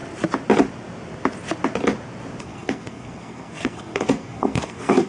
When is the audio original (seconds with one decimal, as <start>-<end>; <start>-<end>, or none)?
0.0-2.4